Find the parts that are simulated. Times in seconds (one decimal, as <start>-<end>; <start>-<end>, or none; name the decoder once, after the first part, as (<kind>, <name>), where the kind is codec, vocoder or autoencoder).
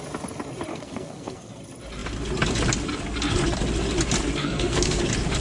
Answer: 0.7-1.6 (codec, SNAC); 4.4-5.0